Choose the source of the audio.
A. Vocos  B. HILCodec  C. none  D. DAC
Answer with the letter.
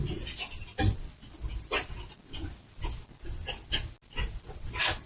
C